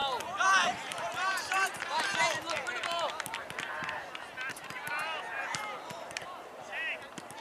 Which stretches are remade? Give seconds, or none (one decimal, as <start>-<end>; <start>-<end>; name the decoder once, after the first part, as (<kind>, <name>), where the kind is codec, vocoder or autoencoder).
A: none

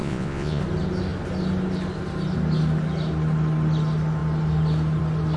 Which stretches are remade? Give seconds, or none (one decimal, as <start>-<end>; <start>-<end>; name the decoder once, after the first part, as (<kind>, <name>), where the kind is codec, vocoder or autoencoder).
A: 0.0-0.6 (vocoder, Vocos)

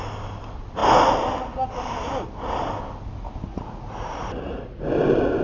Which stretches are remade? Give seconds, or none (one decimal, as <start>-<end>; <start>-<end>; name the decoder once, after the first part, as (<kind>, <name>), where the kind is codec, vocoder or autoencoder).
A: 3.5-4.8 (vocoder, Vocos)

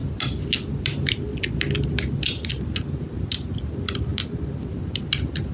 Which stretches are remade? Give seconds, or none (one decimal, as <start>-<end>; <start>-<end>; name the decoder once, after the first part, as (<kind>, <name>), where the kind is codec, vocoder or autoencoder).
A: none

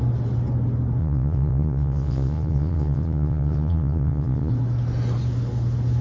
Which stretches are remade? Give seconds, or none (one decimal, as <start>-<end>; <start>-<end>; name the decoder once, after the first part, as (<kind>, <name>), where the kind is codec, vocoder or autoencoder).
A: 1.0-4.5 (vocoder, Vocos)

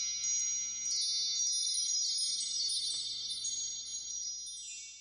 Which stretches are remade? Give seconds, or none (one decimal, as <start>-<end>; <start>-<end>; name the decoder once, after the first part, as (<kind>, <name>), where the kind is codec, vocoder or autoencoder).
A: 1.6-4.3 (vocoder, Vocos)

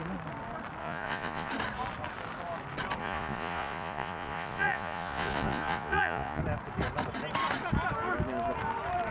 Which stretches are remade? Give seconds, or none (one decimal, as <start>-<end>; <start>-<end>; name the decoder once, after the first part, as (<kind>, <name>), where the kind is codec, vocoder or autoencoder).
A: 0.8-1.5 (vocoder, Vocos); 3.0-6.4